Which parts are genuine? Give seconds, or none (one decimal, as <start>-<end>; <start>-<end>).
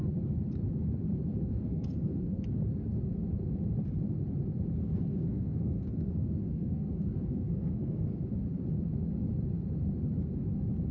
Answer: 0.0-1.3; 2.4-4.8; 8.2-10.9